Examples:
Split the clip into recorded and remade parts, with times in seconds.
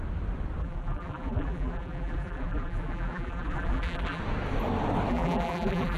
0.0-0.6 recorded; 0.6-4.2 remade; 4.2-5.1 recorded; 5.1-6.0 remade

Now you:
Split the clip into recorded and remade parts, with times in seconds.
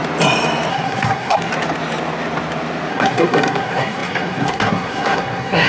0.0-0.7 recorded; 0.7-1.5 remade; 1.5-2.9 recorded; 2.9-5.7 remade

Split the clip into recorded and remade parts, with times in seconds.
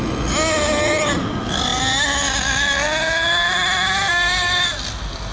0.0-5.3 recorded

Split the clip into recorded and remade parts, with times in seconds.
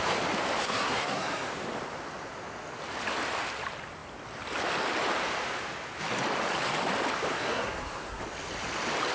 0.0-0.6 recorded; 0.6-1.5 remade; 1.5-7.3 recorded; 7.3-8.2 remade; 8.2-9.1 recorded